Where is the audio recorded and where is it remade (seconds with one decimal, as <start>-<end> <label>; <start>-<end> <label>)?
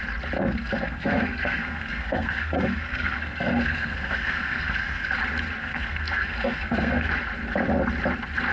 0.0-0.4 recorded; 0.4-5.1 remade; 5.1-5.6 recorded; 5.6-7.1 remade; 7.1-8.5 recorded